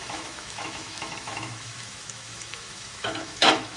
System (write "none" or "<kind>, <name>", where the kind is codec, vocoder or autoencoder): autoencoder, DAC-VAE